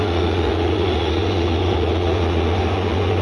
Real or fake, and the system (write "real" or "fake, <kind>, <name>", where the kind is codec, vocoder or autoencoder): fake, vocoder, Vocos